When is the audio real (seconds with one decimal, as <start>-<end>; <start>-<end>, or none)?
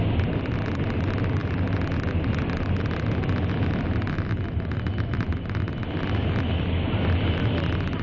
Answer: 0.0-8.0